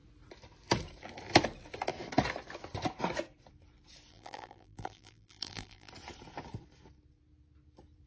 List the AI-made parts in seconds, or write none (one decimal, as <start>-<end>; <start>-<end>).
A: 4.1-5.9